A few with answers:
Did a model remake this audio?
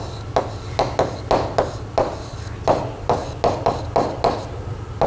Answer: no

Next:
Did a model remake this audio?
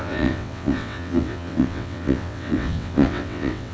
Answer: yes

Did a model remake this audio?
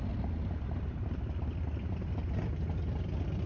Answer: no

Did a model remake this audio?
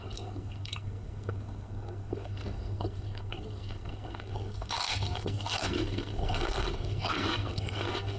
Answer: yes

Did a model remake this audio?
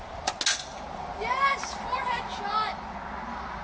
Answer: no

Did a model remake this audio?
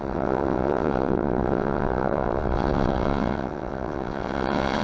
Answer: yes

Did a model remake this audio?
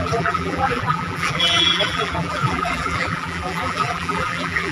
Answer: yes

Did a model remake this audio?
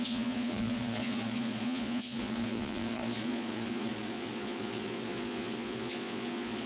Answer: yes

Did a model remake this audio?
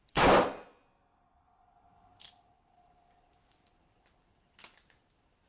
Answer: no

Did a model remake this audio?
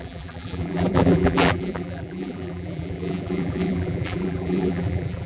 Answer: yes